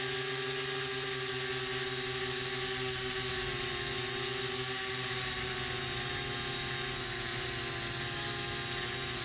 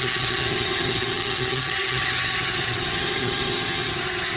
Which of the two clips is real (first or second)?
first